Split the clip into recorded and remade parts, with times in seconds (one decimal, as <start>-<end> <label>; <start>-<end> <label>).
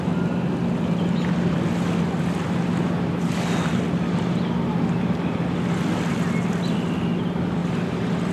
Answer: 0.0-8.3 recorded